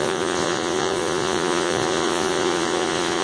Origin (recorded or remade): remade